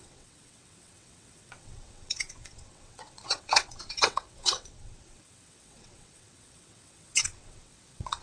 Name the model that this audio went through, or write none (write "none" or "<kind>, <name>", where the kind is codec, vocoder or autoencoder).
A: vocoder, WaveNeXt